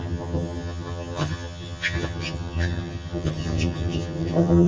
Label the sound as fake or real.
fake